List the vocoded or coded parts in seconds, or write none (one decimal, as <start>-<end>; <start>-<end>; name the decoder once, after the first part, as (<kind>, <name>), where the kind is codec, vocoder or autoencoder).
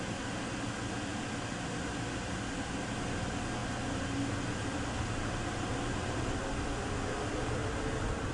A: none